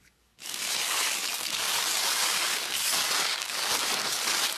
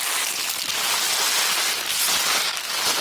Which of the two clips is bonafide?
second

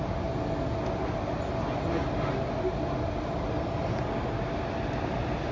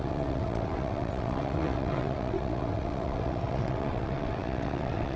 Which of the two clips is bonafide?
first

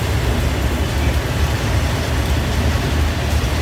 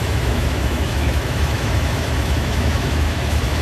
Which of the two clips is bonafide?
first